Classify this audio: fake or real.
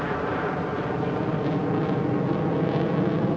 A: real